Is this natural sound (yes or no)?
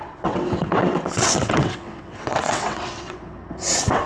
no